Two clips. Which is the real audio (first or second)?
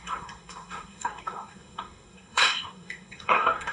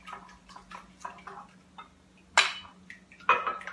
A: second